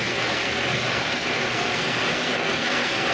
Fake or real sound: fake